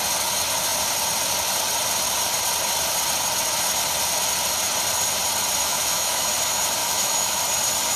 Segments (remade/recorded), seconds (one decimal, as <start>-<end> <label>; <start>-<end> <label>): 0.0-5.6 recorded; 5.6-6.3 remade; 6.3-6.8 recorded; 6.8-7.4 remade; 7.4-8.0 recorded